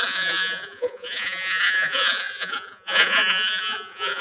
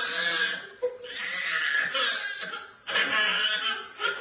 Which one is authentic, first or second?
second